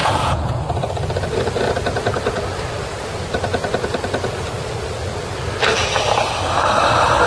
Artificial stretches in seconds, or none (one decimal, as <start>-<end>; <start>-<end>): 0.0-0.6